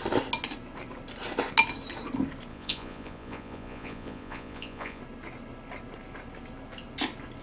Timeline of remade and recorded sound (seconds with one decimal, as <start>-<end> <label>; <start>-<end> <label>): 0.0-2.5 recorded; 2.5-5.0 remade; 5.0-7.4 recorded